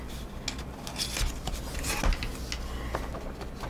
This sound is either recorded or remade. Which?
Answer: recorded